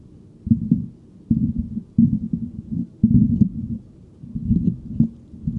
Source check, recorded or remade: recorded